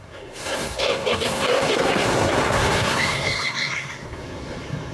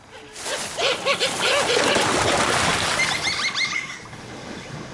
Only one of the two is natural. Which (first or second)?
second